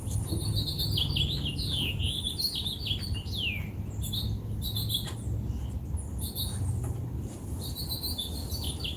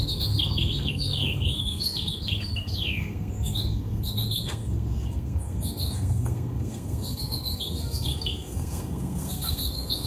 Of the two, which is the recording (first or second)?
first